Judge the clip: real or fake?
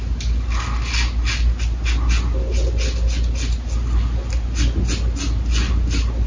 real